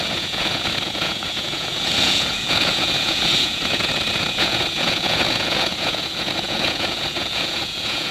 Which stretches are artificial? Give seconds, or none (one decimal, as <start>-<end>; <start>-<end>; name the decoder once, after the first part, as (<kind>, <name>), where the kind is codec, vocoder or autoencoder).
0.0-8.1 (vocoder, Vocos)

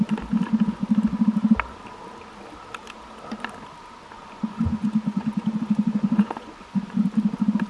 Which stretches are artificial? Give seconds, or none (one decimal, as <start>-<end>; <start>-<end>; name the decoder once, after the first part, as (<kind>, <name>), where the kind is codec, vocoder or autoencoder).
4.2-6.8 (vocoder, Vocos)

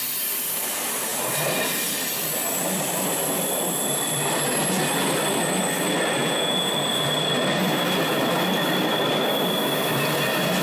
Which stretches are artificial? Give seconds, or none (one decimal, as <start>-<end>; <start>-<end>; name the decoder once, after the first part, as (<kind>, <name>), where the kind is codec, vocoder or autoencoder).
6.2-6.7 (vocoder, Vocos)

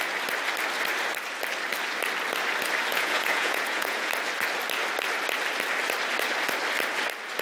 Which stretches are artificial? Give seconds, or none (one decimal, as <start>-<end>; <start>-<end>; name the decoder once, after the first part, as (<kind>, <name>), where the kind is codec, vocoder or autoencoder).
2.9-4.1 (vocoder, Vocos)

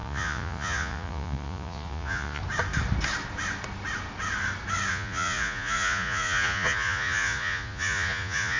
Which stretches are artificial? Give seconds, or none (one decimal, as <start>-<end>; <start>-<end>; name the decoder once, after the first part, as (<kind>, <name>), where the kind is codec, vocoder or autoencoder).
0.0-2.4 (vocoder, Vocos); 4.9-8.6

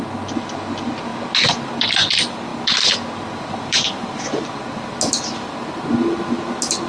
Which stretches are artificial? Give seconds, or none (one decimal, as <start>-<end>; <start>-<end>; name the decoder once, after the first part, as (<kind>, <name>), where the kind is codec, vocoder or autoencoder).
none

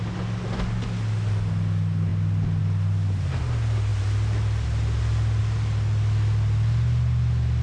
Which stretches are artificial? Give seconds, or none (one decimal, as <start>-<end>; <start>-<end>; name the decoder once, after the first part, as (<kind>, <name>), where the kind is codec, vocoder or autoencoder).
none

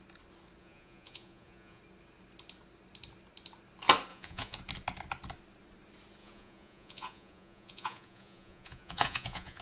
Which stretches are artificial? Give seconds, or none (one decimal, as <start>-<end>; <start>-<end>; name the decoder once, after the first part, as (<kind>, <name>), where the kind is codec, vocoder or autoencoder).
0.6-1.8 (vocoder, Vocos); 4.1-4.6; 6.2-9.6